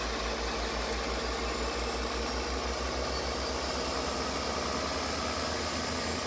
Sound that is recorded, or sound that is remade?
recorded